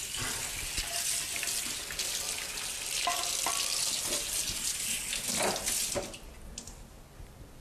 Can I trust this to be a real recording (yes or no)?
yes